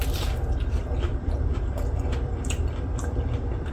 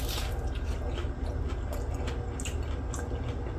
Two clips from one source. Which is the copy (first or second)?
first